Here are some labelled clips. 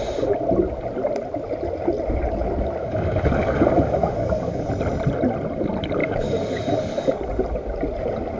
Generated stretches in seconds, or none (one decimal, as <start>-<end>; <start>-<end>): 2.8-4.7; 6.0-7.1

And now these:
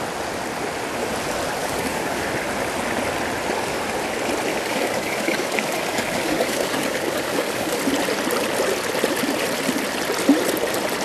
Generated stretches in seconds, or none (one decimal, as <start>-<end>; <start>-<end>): 1.6-2.3; 4.5-7.8

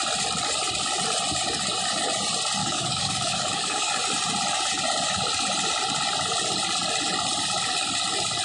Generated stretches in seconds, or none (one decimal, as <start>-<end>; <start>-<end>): 2.6-4.0

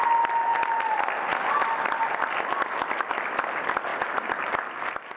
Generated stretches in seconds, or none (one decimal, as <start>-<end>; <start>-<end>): none

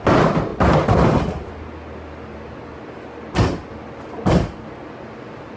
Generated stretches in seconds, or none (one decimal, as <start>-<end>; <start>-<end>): none

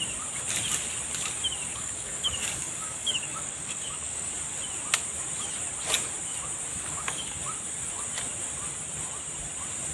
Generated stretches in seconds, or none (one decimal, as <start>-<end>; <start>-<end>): 1.7-4.3; 6.7-7.4

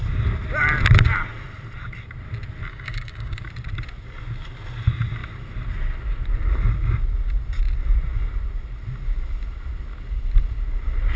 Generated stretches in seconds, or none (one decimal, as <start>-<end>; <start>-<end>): 2.7-3.4